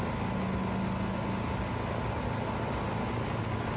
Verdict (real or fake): real